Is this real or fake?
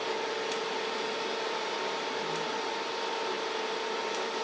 real